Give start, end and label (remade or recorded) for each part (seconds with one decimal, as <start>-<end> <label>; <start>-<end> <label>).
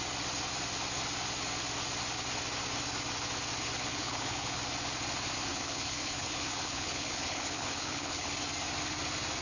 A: 0.0-3.9 recorded; 3.9-4.6 remade; 4.6-5.5 recorded; 5.5-8.3 remade; 8.3-9.4 recorded